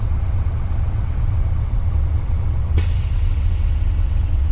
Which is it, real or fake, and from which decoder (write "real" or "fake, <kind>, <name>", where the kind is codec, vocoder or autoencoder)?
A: fake, vocoder, WaveNeXt